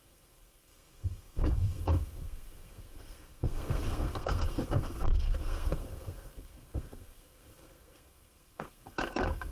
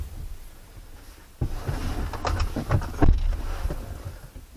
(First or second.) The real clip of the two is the second